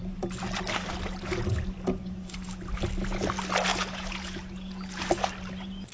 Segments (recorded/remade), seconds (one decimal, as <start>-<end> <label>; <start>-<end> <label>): 0.0-3.7 recorded; 3.7-5.0 remade; 5.0-5.9 recorded